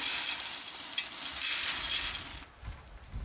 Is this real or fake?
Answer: real